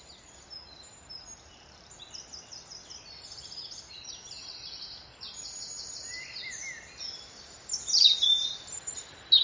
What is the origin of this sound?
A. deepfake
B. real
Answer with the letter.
B